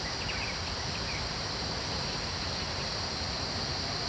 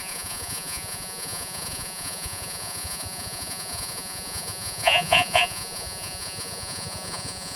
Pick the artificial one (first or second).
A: second